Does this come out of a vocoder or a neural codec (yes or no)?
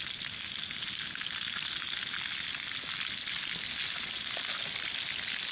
no